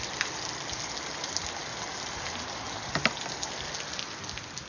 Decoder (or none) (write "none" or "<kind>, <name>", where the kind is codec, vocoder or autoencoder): none